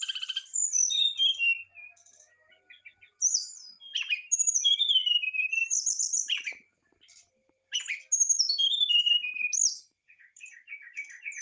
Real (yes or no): yes